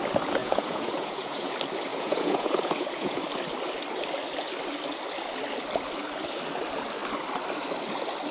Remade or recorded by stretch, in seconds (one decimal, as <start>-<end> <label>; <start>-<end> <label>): 0.0-0.4 recorded; 0.4-1.5 remade; 1.5-1.9 recorded; 1.9-3.2 remade; 3.2-8.3 recorded